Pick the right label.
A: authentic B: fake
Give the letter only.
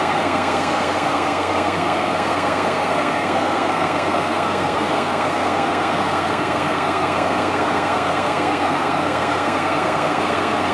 B